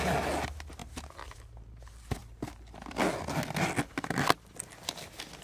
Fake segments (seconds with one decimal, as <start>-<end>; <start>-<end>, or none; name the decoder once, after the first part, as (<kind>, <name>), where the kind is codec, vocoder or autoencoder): none